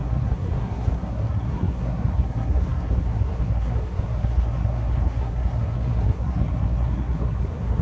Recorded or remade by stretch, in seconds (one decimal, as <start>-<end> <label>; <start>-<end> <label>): 0.0-7.8 remade

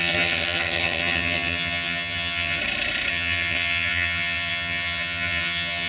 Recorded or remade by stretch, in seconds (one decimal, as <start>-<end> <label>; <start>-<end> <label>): 0.0-2.6 remade; 2.6-3.1 recorded; 3.1-5.9 remade

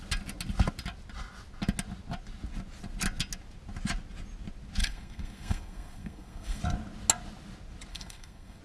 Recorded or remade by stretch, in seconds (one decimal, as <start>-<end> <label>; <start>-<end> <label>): 0.0-4.8 recorded; 4.8-6.6 remade; 6.6-7.9 recorded; 7.9-8.6 remade

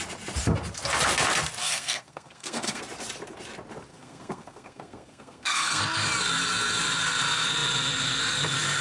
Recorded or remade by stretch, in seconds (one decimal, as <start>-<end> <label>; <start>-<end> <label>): 0.0-1.6 recorded; 1.6-2.8 remade; 2.8-3.9 recorded; 3.9-5.8 remade; 5.8-8.8 recorded

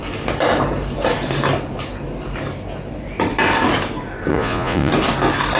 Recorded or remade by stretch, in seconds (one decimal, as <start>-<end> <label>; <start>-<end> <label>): 0.0-4.3 recorded; 4.3-4.9 remade; 4.9-5.6 recorded